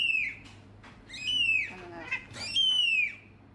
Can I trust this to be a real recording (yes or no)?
yes